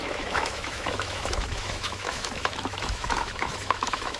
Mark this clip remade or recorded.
remade